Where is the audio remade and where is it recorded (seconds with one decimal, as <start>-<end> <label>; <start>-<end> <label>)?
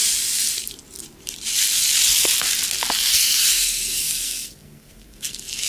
0.0-3.1 recorded; 3.1-5.7 remade